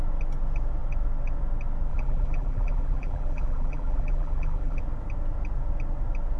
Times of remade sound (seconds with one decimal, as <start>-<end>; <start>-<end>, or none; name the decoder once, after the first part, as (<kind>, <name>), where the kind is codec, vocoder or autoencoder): 1.9-4.8 (vocoder, BigVGAN v2)